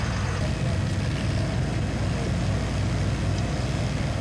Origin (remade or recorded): recorded